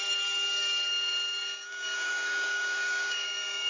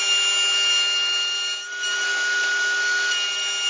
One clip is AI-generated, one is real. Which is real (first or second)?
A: second